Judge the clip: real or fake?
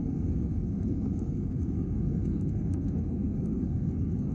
fake